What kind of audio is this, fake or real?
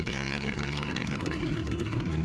fake